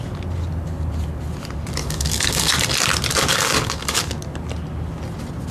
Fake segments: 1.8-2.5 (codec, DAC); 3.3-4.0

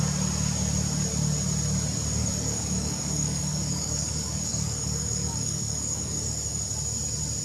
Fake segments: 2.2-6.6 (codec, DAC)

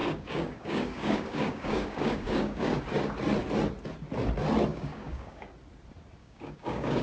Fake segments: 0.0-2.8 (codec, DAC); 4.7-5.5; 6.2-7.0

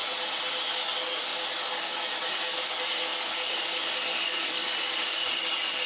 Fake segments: 0.7-5.9 (codec, DAC)

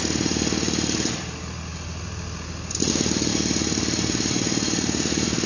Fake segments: none

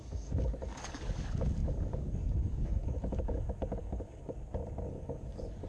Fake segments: 0.0-4.2 (codec, DAC); 4.9-5.7

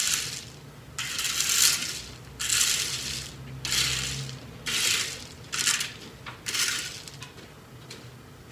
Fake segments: none

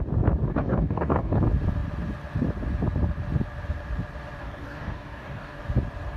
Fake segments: 0.5-1.4 (codec, DAC); 4.4-5.6